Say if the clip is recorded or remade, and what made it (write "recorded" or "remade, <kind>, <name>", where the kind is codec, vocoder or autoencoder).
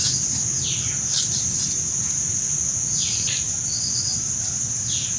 recorded